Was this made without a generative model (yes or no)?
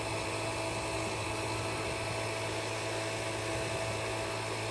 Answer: yes